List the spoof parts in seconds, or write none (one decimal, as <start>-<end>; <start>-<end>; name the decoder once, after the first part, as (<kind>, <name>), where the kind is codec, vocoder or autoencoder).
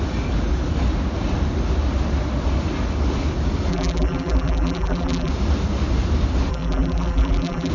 3.7-5.3 (vocoder, BigVGAN v2); 6.5-7.7